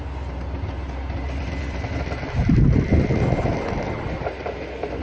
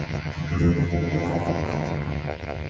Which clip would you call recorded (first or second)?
first